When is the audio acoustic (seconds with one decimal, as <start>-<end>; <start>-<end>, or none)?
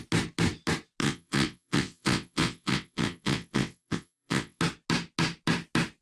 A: 0.0-1.0; 4.6-6.0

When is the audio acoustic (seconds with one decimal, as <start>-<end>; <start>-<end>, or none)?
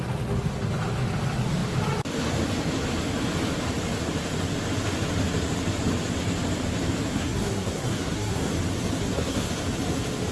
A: 0.0-7.1; 8.5-9.0; 9.5-10.3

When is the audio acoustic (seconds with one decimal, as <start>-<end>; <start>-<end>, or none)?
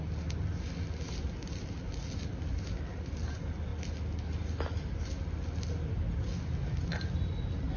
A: 0.0-7.8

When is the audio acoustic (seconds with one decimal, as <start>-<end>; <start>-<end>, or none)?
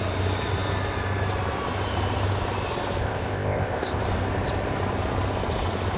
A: 0.0-3.0; 4.0-6.0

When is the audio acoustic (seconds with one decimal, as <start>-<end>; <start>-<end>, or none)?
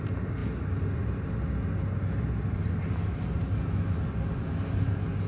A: 0.0-5.3